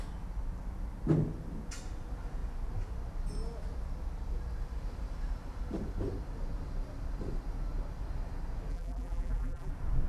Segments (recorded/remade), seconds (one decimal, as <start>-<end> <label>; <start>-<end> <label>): 0.0-8.7 recorded; 8.7-9.7 remade; 9.7-10.1 recorded